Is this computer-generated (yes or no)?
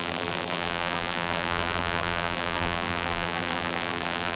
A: yes